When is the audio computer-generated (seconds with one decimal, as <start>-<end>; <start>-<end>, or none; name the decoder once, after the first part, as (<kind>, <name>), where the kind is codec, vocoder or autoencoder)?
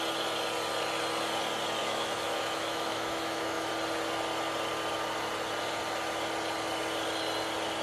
1.8-3.7 (autoencoder, DAC-VAE)